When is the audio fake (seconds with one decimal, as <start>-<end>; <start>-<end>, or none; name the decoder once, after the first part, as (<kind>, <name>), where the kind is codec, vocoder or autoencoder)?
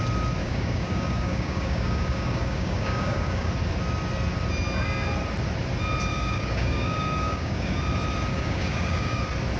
0.4-3.5 (codec, DAC); 6.1-7.8; 8.3-9.2